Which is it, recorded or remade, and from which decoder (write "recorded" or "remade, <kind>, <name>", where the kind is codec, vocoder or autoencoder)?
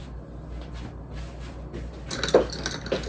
recorded